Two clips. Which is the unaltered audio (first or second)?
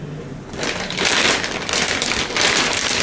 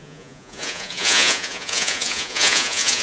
first